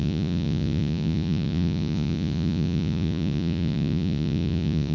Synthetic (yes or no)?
yes